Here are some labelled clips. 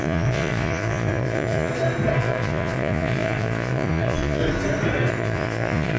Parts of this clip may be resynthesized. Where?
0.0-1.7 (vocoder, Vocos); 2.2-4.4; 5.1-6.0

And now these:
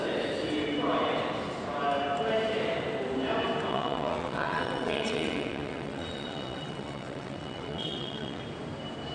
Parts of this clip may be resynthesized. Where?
3.7-8.4 (vocoder, WaveNeXt)

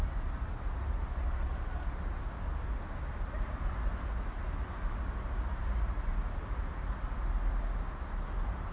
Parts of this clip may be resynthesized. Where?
none

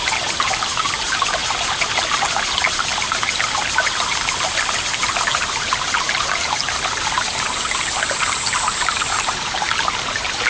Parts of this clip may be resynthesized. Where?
none

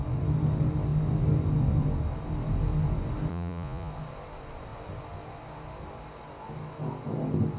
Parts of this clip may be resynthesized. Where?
3.3-3.9 (vocoder, Vocos)

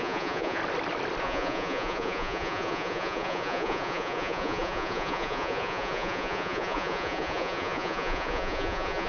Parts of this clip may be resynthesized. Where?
0.0-0.6 (vocoder, Vocos); 1.2-9.1

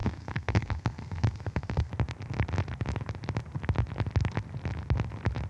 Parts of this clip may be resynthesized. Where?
0.0-1.9 (codec, SNAC)

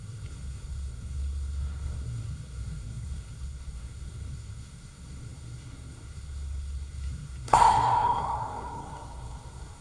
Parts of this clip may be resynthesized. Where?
0.0-9.8 (codec, SNAC)